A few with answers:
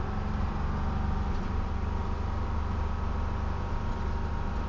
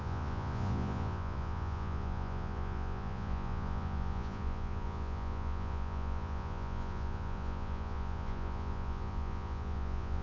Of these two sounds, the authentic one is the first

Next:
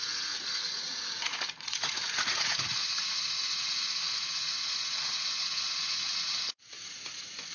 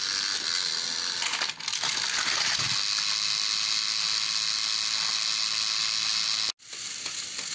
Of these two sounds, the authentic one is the second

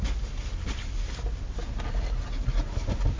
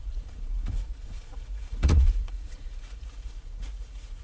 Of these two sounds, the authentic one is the first